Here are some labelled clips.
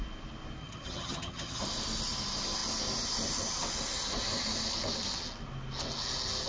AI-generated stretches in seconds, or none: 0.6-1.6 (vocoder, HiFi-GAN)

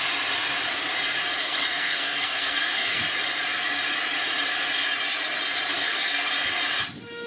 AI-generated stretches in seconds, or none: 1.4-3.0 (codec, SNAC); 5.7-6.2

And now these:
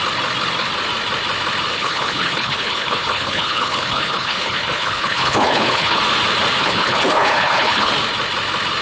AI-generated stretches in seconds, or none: 1.7-6.0 (codec, HILCodec); 6.6-7.9

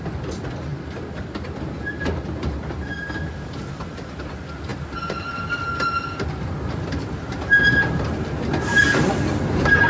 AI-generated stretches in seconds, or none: 4.7-5.2 (vocoder, BigVGAN v2)